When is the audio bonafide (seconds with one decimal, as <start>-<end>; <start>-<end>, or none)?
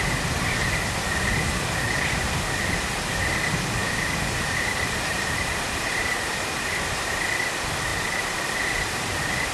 0.0-3.8; 6.6-7.9; 8.4-9.5